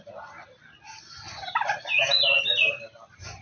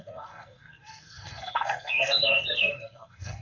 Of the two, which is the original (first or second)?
first